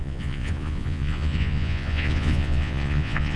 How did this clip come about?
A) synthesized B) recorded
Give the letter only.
A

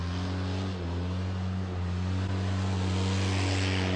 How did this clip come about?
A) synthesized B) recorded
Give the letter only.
B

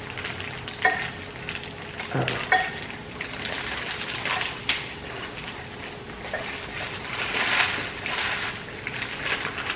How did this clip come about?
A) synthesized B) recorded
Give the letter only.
B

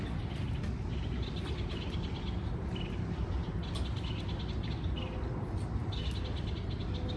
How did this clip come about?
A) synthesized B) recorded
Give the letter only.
B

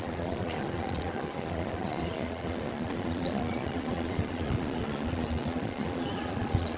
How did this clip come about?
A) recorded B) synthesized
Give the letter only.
B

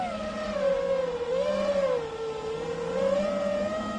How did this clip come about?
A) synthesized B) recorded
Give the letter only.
B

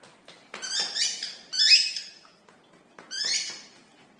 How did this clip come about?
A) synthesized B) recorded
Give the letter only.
B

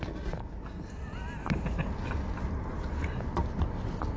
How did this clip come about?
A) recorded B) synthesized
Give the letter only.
A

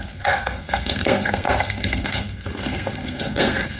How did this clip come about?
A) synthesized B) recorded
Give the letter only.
A